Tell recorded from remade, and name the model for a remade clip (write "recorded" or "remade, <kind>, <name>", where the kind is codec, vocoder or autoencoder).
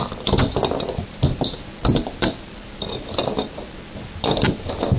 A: recorded